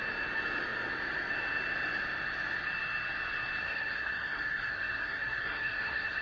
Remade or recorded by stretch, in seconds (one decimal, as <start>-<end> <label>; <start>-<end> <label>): 0.0-3.6 recorded; 3.6-6.2 remade